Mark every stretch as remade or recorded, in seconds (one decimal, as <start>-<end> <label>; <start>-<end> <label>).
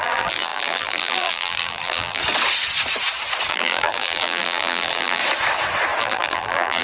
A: 0.0-2.2 remade; 2.2-3.5 recorded; 3.5-5.2 remade; 5.2-6.0 recorded; 6.0-6.8 remade